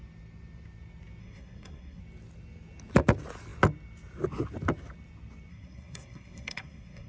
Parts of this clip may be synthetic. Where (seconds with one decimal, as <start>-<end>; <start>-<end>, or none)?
1.2-2.0; 5.5-7.1